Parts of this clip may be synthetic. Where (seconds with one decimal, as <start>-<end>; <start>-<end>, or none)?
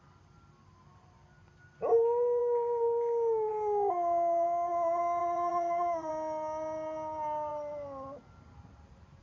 5.2-6.1